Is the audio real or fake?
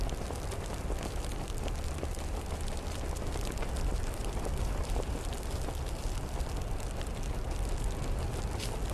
real